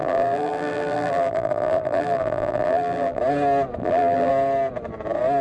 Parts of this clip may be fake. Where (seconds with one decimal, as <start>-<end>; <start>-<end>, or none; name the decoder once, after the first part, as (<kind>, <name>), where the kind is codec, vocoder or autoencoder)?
0.0-3.2 (vocoder, BigVGAN v2); 3.8-4.3

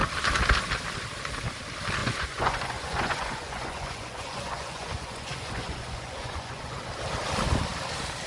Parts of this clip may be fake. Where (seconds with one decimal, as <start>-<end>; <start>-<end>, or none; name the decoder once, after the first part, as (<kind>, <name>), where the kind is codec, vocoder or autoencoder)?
2.0-6.8 (vocoder, Vocos)